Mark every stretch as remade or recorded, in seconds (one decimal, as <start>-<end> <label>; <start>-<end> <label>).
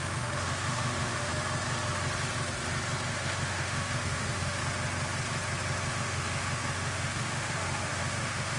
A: 0.0-1.3 remade; 1.3-3.1 recorded; 3.1-4.6 remade; 4.6-5.9 recorded; 5.9-8.6 remade